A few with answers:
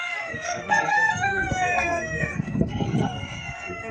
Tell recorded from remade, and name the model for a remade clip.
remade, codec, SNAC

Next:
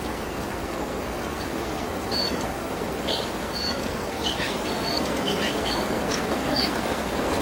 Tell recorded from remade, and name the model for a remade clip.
remade, codec, SNAC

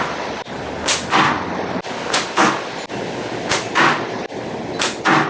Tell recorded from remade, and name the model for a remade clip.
recorded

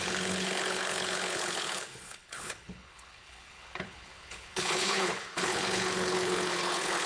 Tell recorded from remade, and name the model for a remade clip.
remade, codec, HILCodec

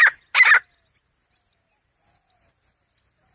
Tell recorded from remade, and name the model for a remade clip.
recorded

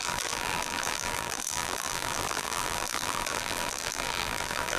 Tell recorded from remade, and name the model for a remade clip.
remade, vocoder, BigVGAN v2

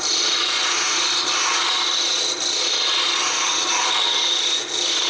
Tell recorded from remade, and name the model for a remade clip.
recorded